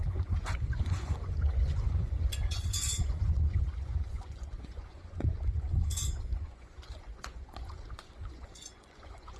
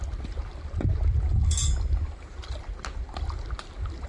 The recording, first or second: second